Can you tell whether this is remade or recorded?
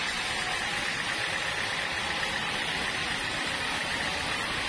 recorded